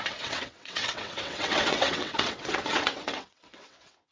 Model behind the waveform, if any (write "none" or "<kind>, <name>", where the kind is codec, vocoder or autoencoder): vocoder, WaveNeXt